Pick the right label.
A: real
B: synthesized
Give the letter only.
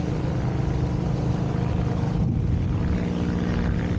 A